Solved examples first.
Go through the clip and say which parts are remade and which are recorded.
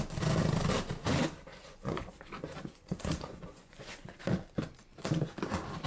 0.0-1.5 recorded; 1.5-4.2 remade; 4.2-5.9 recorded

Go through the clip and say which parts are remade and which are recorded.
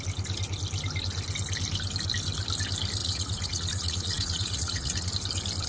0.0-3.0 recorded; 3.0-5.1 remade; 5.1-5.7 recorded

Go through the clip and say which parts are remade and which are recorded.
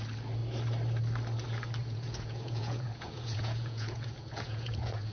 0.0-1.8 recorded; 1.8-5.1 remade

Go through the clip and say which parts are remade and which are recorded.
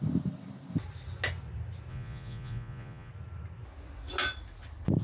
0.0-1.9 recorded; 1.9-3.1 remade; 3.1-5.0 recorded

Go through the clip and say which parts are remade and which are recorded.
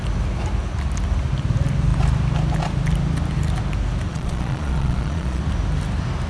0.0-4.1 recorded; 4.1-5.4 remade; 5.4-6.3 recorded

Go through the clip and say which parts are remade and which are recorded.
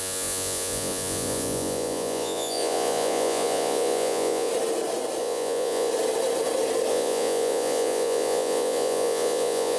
0.0-4.5 remade; 4.5-5.2 recorded; 5.2-5.9 remade; 5.9-6.9 recorded; 6.9-9.8 remade